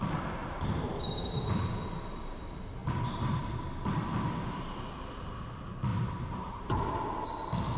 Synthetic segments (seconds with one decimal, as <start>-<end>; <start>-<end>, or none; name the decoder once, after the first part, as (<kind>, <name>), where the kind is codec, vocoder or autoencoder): 0.4-0.9 (vocoder, BigVGAN v2); 2.8-3.4; 5.9-6.8

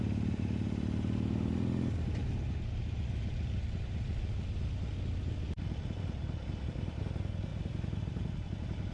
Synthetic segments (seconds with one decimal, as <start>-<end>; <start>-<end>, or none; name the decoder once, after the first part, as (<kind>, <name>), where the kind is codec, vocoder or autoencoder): none

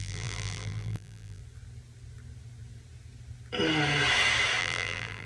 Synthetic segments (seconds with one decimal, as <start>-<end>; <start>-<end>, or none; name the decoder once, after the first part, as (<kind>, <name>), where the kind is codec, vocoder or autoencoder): 0.0-1.4 (vocoder, BigVGAN v2); 4.6-5.3